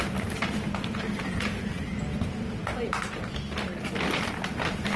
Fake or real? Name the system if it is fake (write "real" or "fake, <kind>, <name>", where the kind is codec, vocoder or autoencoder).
real